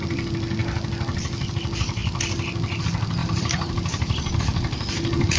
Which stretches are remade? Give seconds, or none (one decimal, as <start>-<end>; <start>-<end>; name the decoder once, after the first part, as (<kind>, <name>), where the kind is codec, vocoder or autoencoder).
3.2-4.4 (vocoder, BigVGAN v2)